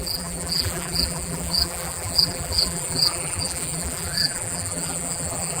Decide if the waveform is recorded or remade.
remade